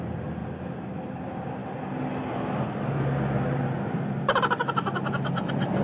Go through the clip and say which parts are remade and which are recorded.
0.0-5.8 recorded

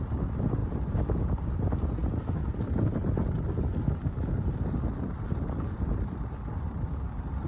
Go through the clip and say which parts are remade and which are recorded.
0.0-7.5 recorded

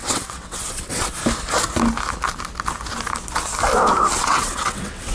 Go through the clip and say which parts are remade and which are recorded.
0.0-1.2 remade; 1.2-4.2 recorded; 4.2-5.1 remade